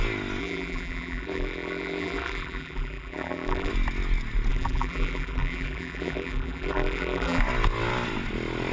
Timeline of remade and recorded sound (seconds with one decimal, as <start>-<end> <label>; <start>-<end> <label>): 0.0-0.4 recorded; 0.4-3.7 remade; 3.7-4.5 recorded; 4.5-7.4 remade; 7.4-8.7 recorded